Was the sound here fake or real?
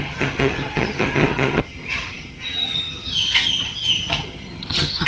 fake